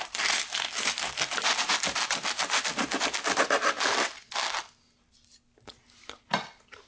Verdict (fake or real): real